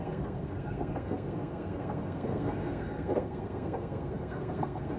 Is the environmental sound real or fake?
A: fake